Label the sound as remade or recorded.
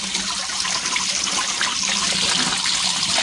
recorded